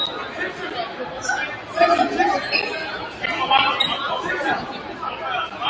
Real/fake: real